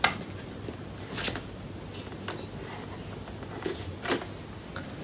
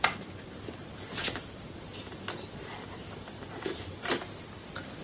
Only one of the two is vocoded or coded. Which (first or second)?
second